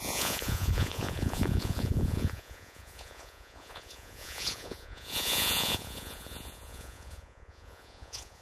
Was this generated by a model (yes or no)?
yes